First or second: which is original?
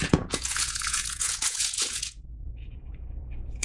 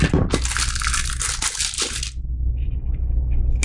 second